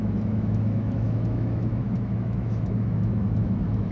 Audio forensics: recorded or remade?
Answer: remade